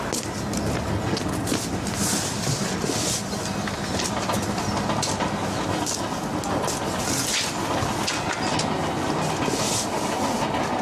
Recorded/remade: recorded